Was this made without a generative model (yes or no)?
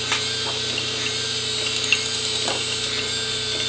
yes